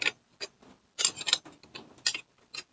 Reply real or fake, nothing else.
real